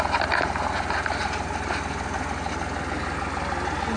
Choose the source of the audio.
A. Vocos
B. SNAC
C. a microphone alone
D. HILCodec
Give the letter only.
C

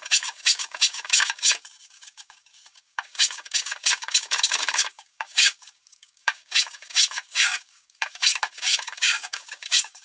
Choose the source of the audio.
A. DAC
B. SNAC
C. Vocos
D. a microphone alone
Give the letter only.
A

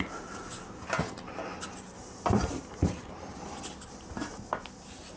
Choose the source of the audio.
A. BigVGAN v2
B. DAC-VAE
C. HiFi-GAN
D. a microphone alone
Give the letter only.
D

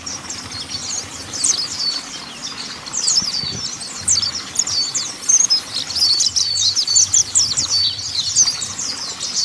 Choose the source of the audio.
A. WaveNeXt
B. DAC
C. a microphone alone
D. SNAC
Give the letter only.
C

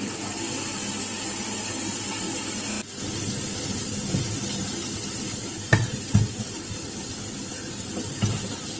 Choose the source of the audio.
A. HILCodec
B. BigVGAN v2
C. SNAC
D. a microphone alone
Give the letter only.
D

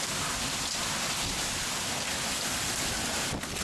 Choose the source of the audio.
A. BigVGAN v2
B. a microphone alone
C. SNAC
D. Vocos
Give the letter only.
B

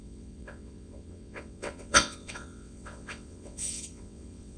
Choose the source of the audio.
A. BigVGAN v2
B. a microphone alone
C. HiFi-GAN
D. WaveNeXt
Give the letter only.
D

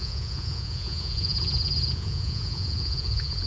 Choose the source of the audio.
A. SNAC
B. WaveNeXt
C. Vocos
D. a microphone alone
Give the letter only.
C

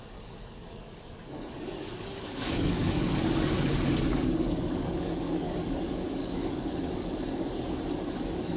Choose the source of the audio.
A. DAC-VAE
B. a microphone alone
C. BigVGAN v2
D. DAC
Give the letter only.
D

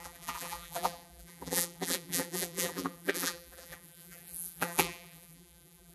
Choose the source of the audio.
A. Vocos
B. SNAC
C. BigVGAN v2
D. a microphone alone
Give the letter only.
C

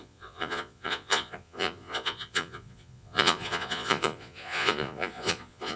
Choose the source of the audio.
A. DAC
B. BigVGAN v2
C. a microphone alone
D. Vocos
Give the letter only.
D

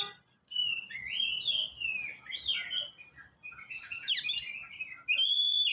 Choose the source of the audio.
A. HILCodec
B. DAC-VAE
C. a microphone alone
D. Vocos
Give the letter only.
C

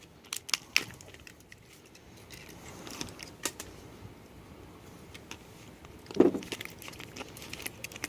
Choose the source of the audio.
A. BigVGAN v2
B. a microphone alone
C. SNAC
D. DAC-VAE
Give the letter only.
B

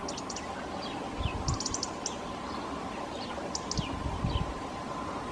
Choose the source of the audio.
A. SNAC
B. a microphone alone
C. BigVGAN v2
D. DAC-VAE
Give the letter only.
B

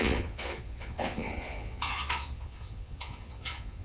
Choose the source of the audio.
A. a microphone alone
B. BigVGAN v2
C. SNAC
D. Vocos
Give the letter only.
D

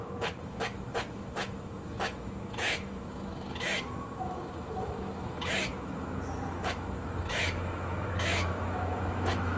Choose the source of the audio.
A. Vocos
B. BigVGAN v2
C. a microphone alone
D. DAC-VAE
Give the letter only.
D